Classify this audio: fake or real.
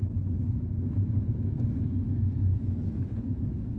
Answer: fake